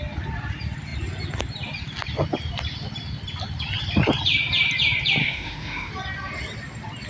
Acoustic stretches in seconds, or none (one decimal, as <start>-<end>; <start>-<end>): 0.0-5.2; 5.9-7.1